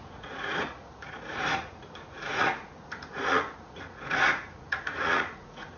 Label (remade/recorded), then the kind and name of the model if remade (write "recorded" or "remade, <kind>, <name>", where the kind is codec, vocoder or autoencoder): remade, vocoder, Vocos